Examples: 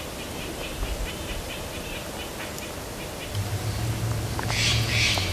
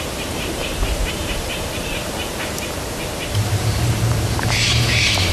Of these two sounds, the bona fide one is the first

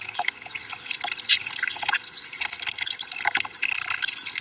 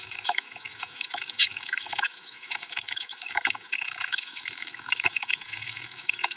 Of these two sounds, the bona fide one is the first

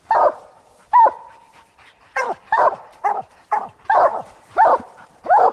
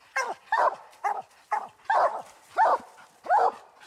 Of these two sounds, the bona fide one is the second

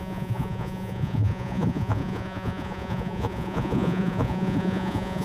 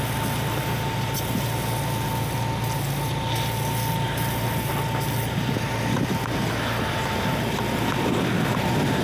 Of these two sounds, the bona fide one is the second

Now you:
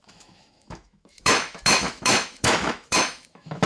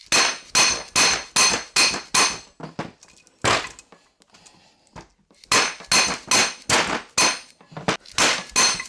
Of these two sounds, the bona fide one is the second